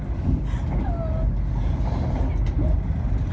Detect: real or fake real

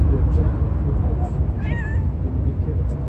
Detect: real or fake real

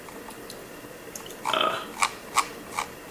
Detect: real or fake real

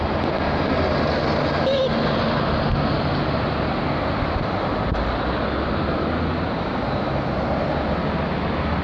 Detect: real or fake real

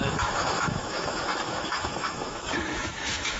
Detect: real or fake fake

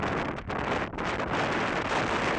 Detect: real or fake real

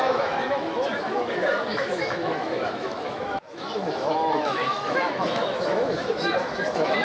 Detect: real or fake fake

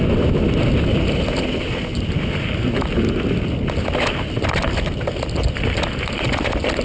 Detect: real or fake real